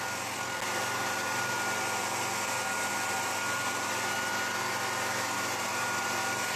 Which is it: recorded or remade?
recorded